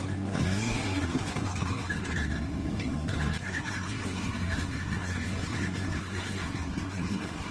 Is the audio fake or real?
fake